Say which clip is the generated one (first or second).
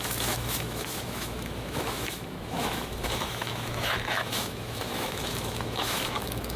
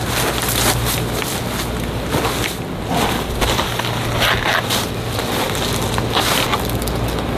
first